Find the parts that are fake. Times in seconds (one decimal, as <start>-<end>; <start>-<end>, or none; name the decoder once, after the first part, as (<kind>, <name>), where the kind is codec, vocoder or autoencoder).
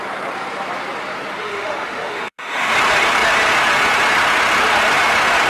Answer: 1.4-2.7 (autoencoder, DAC-VAE)